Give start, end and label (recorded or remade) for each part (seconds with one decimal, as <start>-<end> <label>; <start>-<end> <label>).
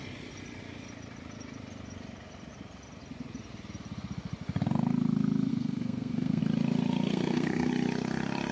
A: 0.0-5.5 recorded; 5.5-6.4 remade; 6.4-7.1 recorded; 7.1-7.7 remade; 7.7-8.5 recorded